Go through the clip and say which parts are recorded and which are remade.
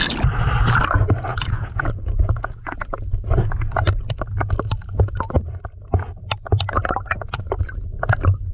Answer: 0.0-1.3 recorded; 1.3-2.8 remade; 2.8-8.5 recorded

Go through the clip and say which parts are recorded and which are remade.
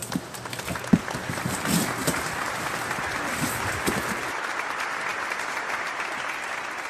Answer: 0.0-0.5 remade; 0.5-2.0 recorded; 2.0-2.7 remade; 2.7-6.9 recorded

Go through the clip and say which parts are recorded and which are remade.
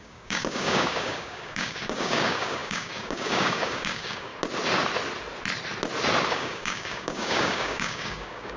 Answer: 0.0-4.3 remade; 4.3-6.3 recorded; 6.3-8.6 remade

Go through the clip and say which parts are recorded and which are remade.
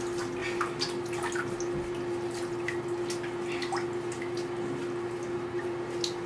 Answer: 0.0-6.3 recorded